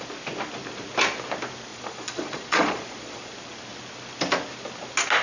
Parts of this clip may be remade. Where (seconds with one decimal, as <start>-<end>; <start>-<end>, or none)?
1.7-3.3